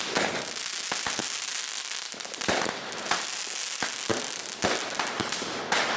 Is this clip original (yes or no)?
yes